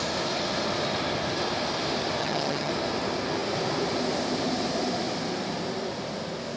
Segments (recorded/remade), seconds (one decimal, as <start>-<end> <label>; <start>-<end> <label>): 0.0-2.2 recorded; 2.2-2.7 remade; 2.7-6.6 recorded